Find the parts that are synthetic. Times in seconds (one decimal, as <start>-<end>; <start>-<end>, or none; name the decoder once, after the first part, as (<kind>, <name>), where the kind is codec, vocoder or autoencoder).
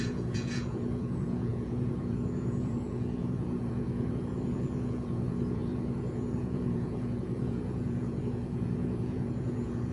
0.0-9.9 (vocoder, Vocos)